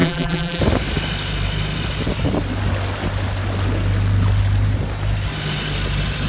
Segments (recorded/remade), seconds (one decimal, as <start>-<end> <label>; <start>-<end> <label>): 0.0-0.6 remade; 0.6-6.3 recorded